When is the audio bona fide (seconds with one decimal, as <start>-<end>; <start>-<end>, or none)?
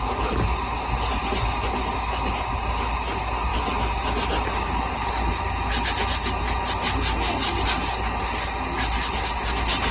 0.0-9.9